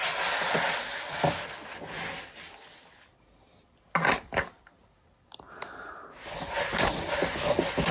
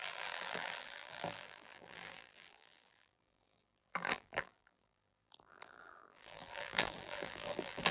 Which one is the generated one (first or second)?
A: second